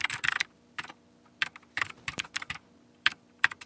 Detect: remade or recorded remade